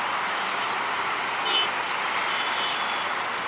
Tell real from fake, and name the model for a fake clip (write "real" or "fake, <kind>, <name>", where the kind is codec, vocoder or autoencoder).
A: real